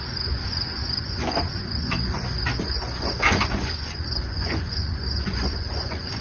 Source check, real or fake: fake